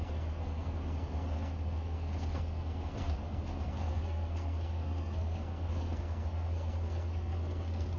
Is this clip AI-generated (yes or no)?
yes